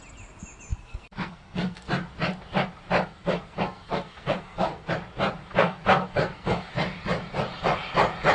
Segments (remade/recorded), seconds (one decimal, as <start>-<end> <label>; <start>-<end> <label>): 0.0-0.7 recorded; 0.7-1.9 remade; 1.9-3.1 recorded; 3.1-4.9 remade; 4.9-5.4 recorded; 5.4-6.7 remade; 6.7-8.3 recorded